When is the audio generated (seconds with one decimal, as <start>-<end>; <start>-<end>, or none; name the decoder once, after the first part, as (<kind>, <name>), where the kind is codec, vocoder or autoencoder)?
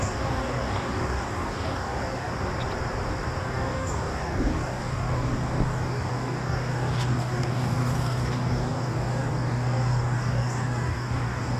0.0-2.3 (codec, DAC); 3.4-11.6